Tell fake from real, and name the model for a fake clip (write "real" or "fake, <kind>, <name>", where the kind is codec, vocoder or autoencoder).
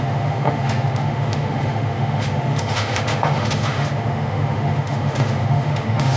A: fake, autoencoder, DAC-VAE